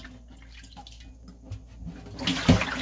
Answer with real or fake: real